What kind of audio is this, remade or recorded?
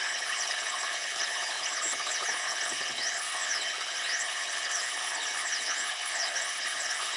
remade